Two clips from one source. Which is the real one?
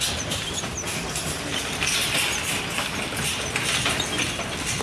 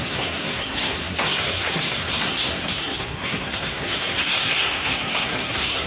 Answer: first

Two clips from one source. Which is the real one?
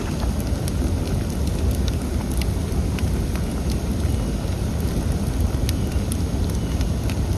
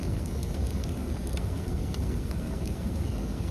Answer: first